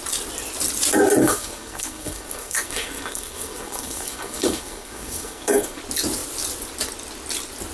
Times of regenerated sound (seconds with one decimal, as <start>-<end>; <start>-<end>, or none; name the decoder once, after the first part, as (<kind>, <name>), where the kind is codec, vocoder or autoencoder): 1.2-5.8 (codec, SNAC)